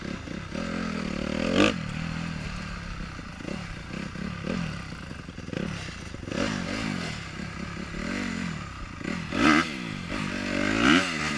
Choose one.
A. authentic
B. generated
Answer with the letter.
A